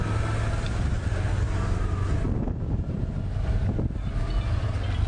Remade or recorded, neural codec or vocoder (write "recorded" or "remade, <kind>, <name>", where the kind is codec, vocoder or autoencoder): recorded